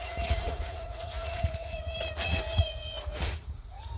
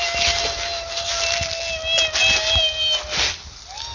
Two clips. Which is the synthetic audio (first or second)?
first